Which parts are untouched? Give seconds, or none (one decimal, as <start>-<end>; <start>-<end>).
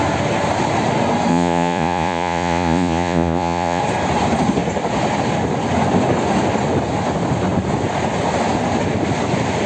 0.0-1.3; 3.8-9.7